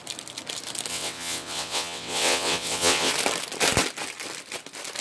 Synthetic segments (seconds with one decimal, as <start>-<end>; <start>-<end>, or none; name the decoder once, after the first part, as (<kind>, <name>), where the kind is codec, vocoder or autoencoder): 0.9-3.1 (vocoder, WaveNeXt)